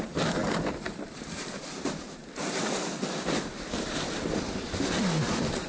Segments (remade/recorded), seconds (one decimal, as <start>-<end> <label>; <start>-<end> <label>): 0.0-2.2 remade; 2.2-5.7 recorded